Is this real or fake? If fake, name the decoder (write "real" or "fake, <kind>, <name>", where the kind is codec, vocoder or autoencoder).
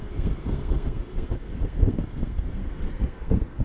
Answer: fake, codec, SNAC